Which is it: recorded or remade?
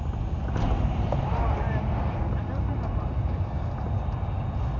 recorded